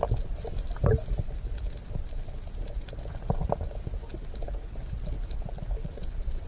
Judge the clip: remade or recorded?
recorded